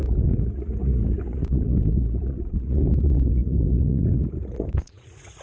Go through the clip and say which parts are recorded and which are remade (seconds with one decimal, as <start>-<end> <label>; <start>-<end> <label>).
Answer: 0.0-5.4 remade